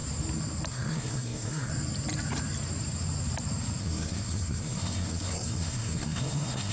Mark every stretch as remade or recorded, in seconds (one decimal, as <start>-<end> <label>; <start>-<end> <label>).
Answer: 0.0-0.7 recorded; 0.7-1.7 remade; 1.7-3.8 recorded; 3.8-6.7 remade